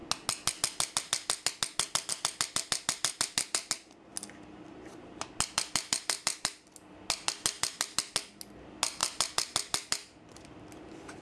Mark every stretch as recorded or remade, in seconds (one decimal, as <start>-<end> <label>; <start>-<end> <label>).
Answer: 0.0-11.2 recorded